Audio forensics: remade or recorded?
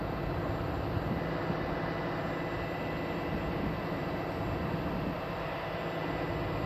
recorded